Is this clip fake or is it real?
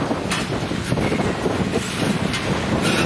real